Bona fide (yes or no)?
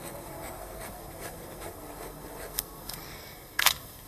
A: no